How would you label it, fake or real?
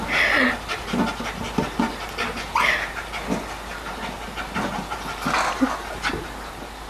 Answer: real